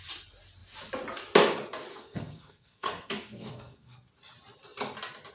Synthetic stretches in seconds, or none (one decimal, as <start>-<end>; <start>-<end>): 1.9-4.1